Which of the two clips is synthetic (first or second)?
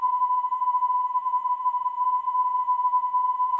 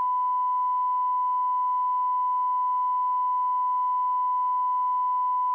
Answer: first